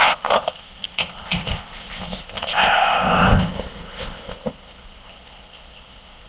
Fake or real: fake